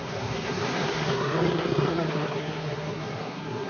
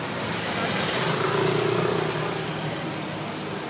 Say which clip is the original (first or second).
second